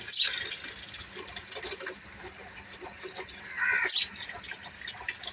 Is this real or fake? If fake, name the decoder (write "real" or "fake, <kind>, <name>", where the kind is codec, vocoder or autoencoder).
real